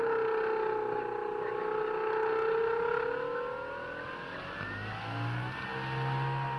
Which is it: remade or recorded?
recorded